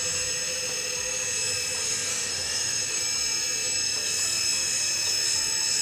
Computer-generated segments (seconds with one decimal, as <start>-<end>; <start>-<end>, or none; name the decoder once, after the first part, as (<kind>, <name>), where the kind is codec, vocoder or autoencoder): 2.1-3.0 (autoencoder, DAC-VAE)